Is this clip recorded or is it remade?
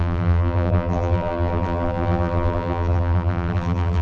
remade